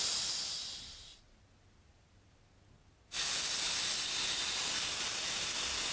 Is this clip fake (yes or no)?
no